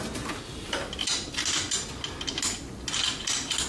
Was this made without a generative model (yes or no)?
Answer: yes